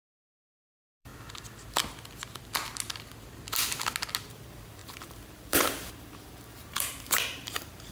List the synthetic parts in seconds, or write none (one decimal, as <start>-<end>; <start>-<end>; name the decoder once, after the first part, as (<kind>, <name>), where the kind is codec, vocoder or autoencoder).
0.0-1.1 (vocoder, BigVGAN v2); 4.3-7.9